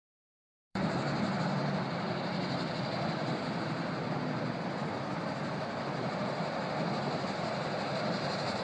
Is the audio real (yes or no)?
no